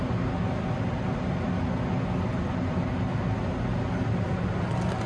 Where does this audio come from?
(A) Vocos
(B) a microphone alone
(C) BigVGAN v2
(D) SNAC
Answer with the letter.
B